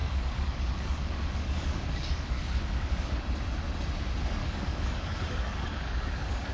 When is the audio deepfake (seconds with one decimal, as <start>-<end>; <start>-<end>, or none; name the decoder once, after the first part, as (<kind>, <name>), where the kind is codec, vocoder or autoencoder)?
0.0-3.2 (codec, DAC); 4.4-6.5

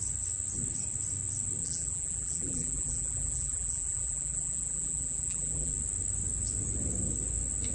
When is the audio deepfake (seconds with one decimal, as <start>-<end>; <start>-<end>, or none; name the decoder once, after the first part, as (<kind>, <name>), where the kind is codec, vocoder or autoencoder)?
1.6-5.7 (vocoder, BigVGAN v2)

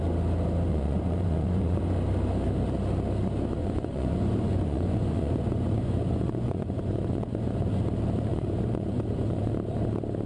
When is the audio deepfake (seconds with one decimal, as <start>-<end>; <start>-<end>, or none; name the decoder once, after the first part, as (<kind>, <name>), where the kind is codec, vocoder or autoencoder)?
0.7-1.8 (vocoder, Vocos); 3.6-7.8; 8.3-9.5